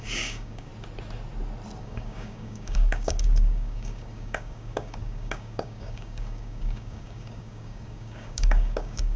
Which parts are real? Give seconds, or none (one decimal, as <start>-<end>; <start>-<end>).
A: 0.7-1.8